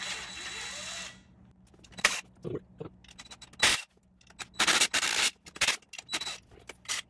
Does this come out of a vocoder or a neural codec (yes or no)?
no